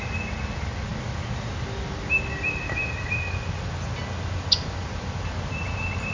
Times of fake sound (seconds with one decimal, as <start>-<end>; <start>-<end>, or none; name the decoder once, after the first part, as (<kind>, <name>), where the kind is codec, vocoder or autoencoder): none